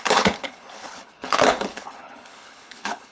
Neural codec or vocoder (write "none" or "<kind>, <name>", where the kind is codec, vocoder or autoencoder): codec, HILCodec